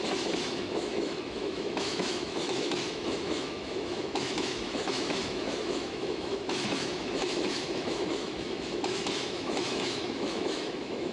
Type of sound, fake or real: fake